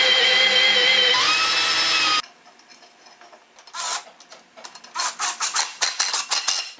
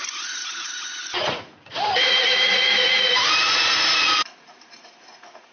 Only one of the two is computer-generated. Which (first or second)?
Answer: second